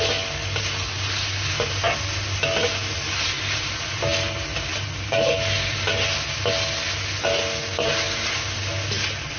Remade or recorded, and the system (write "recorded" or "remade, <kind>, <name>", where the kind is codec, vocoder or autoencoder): recorded